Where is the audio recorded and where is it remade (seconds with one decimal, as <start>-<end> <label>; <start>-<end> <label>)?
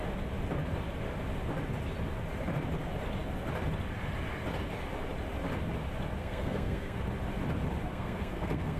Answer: 0.0-6.2 recorded; 6.2-7.0 remade; 7.0-7.9 recorded; 7.9-8.8 remade